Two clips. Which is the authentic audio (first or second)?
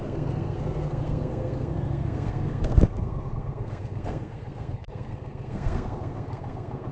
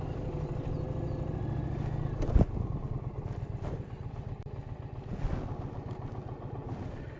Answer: second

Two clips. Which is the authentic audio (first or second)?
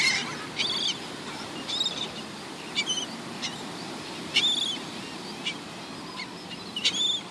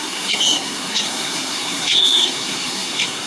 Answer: first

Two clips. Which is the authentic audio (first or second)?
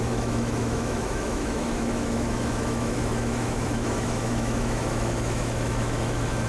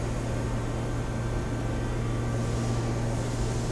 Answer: second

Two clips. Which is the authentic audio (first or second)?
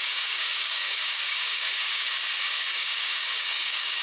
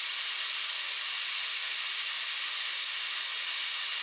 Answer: second